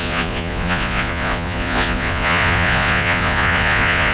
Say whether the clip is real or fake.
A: fake